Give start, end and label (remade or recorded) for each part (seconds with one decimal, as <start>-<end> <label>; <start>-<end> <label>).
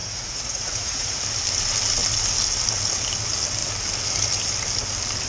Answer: 0.0-1.2 remade; 1.2-5.3 recorded